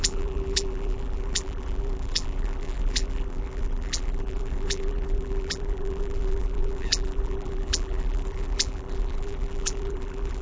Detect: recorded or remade remade